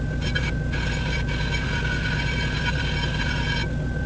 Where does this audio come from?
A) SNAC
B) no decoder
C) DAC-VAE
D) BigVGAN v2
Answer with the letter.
B